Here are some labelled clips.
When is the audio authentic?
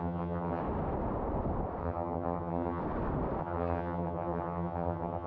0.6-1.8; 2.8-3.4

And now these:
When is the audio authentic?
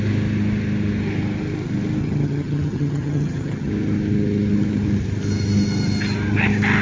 0.0-2.0; 3.7-6.8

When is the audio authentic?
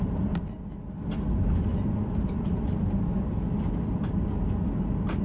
0.0-5.2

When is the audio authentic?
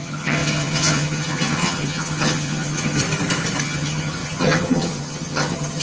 3.0-3.6